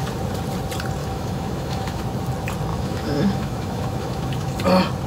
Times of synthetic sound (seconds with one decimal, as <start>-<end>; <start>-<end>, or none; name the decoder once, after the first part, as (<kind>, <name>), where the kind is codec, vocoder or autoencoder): 1.0-2.0 (autoencoder, DAC-VAE); 2.7-4.6